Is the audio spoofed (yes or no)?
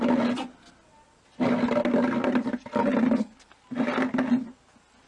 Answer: no